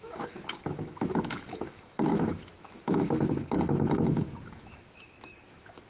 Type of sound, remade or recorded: remade